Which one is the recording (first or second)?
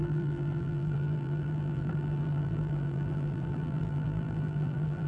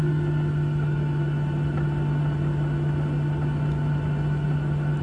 second